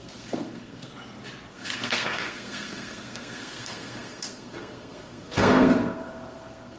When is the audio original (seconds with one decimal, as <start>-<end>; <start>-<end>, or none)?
0.9-1.5